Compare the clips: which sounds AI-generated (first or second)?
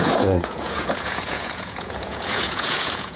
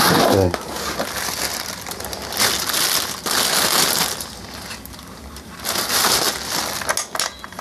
first